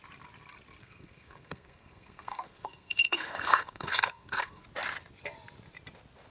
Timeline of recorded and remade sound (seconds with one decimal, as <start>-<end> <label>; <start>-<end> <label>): 0.0-0.8 recorded; 0.8-4.6 remade; 4.6-6.3 recorded